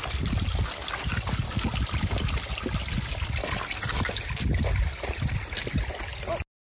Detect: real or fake real